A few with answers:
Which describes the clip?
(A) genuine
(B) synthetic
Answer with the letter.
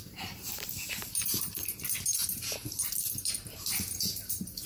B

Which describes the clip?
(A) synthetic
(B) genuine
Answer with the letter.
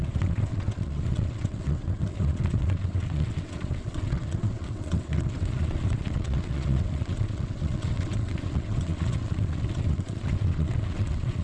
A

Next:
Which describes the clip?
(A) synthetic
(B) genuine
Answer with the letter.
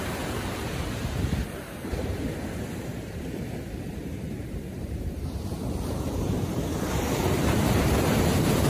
A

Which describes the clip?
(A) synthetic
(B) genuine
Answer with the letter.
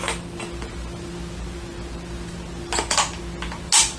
B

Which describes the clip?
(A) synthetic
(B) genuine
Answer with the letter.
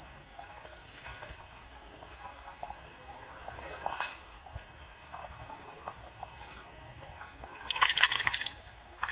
A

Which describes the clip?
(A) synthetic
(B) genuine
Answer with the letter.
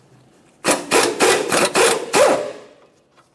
B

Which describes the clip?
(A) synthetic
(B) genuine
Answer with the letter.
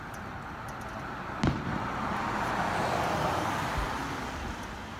B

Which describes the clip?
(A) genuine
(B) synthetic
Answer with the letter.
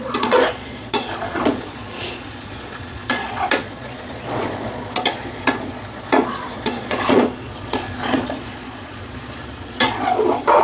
B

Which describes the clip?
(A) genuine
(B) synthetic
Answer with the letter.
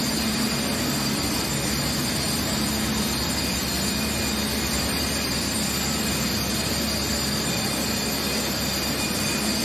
A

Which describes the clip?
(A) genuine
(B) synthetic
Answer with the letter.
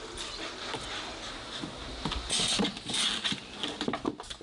A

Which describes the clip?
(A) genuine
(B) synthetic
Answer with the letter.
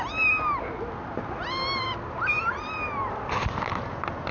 A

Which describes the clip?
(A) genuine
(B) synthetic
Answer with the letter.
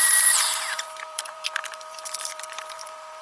B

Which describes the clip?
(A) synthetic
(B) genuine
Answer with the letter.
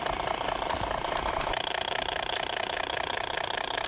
B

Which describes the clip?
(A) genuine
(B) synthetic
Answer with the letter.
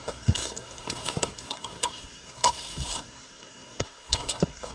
B